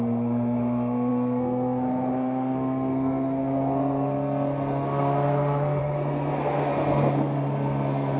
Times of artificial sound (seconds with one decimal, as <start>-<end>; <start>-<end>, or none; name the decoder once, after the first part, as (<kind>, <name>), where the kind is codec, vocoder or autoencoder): 0.0-8.2 (codec, SNAC)